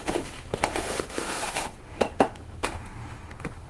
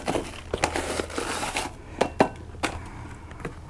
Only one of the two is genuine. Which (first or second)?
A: second